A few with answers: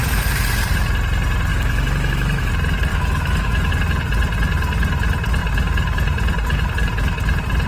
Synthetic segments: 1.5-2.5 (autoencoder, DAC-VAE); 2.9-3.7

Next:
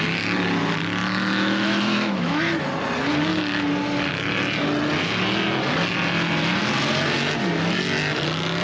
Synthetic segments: 1.0-2.4 (autoencoder, DAC-VAE)

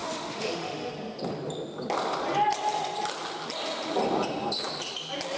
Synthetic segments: 0.0-0.9 (autoencoder, DAC-VAE)

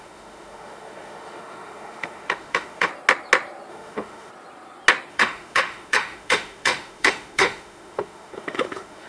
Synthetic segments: 0.0-2.9 (autoencoder, DAC-VAE); 3.7-4.3; 5.1-9.1

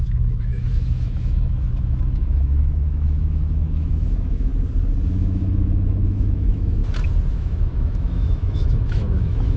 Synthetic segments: 0.0-4.5 (autoencoder, DAC-VAE); 5.1-6.8; 7.3-9.6